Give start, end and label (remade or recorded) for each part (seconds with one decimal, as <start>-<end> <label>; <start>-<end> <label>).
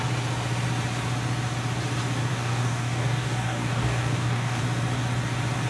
0.0-2.3 recorded; 2.3-4.6 remade; 4.6-5.7 recorded